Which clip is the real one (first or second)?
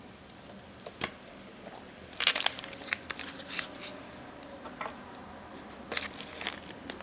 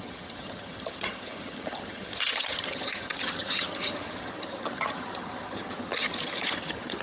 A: first